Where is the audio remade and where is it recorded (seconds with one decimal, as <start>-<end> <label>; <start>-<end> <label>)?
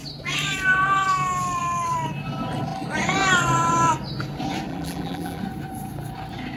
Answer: 0.0-4.7 recorded; 4.7-5.4 remade; 5.4-6.6 recorded